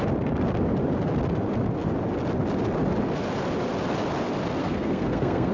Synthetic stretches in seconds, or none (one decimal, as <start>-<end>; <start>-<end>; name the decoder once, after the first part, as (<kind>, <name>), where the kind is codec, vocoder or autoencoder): 4.6-5.5 (codec, SNAC)